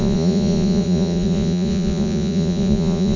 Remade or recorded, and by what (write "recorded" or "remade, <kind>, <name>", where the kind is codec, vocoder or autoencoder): remade, vocoder, Vocos